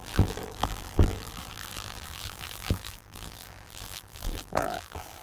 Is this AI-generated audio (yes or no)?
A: yes